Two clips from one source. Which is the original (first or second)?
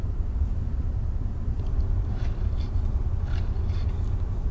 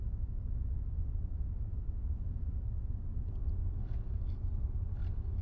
second